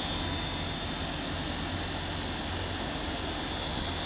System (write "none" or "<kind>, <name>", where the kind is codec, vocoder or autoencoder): none